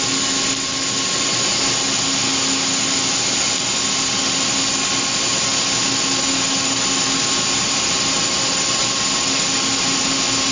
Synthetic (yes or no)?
no